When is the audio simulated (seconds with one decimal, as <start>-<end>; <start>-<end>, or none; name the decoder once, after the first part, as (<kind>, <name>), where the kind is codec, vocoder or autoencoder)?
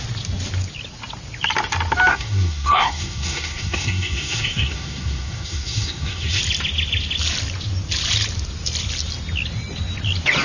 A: 2.1-6.4 (codec, SNAC)